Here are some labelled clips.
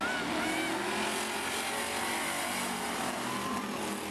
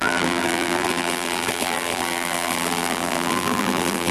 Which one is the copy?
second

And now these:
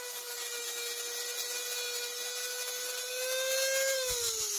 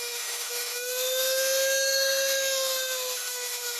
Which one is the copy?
second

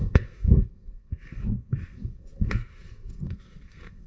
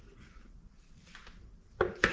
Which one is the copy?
first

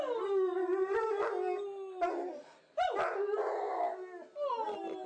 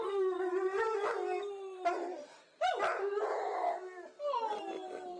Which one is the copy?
second